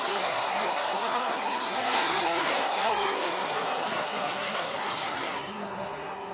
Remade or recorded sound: remade